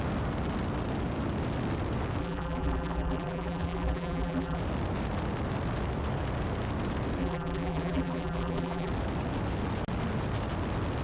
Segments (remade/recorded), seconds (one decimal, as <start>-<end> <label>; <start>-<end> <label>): 0.0-2.2 recorded; 2.2-4.6 remade; 4.6-7.2 recorded; 7.2-8.9 remade; 8.9-11.0 recorded